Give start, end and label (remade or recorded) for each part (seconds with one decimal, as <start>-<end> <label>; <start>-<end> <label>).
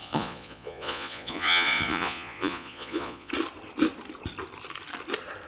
0.0-3.3 remade; 3.3-5.5 recorded